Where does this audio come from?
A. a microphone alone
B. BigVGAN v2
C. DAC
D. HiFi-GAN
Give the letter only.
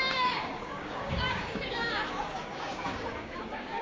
C